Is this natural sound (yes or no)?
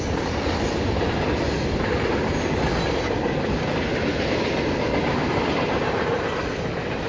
no